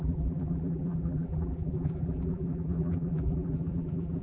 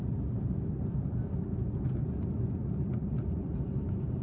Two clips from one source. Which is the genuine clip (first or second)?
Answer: second